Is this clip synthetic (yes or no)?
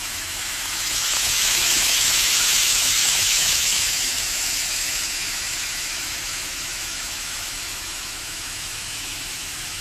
yes